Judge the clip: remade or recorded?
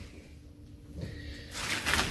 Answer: recorded